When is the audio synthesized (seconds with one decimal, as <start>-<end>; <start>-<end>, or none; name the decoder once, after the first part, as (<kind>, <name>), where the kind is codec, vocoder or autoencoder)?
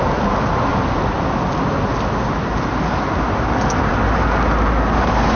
none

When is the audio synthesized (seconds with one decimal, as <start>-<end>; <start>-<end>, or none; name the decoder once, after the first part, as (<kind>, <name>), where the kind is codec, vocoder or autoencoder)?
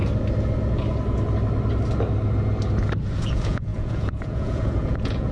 3.2-5.3 (vocoder, Vocos)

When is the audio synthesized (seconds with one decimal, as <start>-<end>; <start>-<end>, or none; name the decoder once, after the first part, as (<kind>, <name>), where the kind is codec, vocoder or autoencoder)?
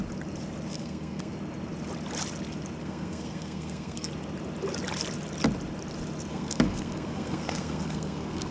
0.7-1.3 (codec, SNAC); 2.8-4.1; 6.3-8.5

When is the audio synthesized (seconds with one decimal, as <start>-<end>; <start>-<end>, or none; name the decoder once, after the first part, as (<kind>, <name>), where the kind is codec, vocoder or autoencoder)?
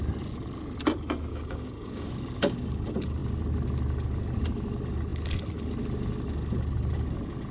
1.3-2.1 (codec, DAC)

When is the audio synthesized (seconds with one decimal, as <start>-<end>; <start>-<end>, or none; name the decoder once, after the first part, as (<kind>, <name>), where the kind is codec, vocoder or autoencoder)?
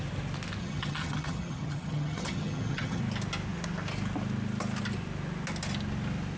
0.6-3.0 (vocoder, HiFi-GAN)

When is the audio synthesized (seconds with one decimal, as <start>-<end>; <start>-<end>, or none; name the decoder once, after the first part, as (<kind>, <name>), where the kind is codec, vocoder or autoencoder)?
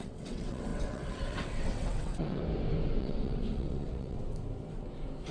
0.0-2.4 (vocoder, WaveNeXt); 3.0-4.2